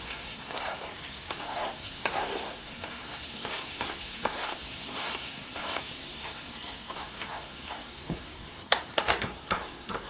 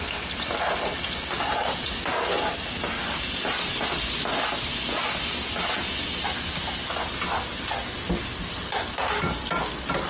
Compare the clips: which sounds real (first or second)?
second